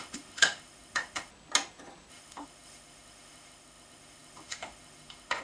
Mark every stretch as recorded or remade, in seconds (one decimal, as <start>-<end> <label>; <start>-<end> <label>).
0.0-1.3 remade; 1.3-2.1 recorded; 2.1-5.4 remade